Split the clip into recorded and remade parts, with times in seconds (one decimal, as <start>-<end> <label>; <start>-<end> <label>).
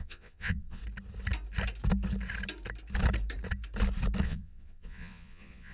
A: 0.0-0.8 remade; 0.8-4.2 recorded; 4.2-5.7 remade